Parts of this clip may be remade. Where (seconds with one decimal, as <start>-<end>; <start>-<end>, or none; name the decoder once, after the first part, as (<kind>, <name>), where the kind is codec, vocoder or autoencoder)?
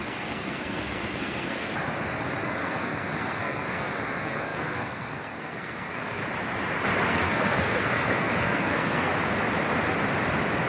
0.0-1.7 (codec, SNAC); 2.4-6.2; 7.1-9.1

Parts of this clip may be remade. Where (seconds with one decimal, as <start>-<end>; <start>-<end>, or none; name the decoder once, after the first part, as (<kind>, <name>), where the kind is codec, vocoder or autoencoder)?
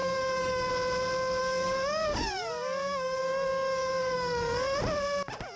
0.0-0.7 (codec, DAC); 1.4-4.8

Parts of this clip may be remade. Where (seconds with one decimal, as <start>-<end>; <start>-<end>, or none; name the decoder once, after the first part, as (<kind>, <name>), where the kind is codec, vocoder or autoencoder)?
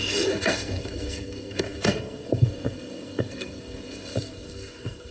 0.0-5.1 (codec, SNAC)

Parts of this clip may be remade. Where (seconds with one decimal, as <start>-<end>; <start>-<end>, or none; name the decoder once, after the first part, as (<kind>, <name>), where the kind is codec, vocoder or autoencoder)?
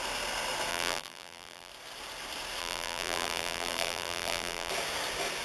0.7-1.7 (vocoder, BigVGAN v2); 2.6-4.7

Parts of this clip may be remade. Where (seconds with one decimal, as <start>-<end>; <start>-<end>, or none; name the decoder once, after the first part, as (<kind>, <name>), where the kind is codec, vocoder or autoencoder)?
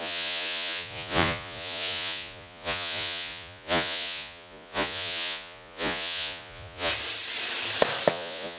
0.0-6.9 (vocoder, Vocos); 8.1-8.6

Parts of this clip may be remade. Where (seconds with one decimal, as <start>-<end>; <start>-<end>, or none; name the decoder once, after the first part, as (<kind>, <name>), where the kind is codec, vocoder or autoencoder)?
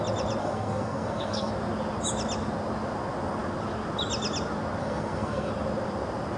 0.4-1.5 (codec, SNAC); 4.8-5.5